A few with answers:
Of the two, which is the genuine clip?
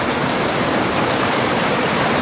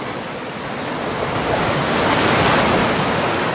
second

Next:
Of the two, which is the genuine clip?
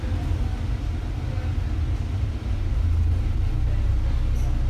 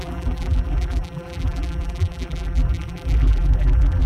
first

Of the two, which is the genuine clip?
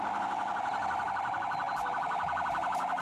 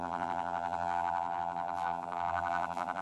first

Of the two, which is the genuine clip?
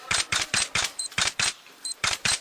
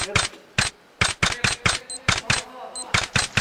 second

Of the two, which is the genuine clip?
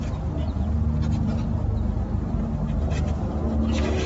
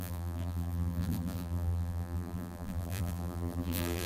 first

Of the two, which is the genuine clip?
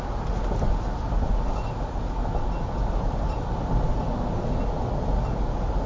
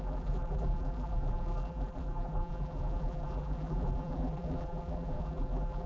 first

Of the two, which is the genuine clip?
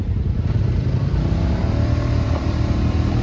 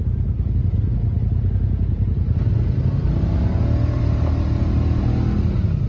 second